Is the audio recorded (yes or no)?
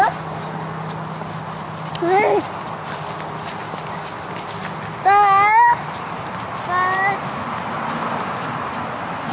yes